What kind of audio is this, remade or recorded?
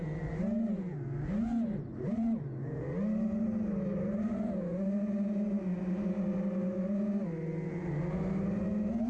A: recorded